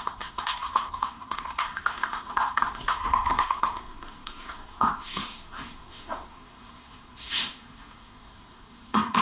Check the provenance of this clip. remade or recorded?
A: remade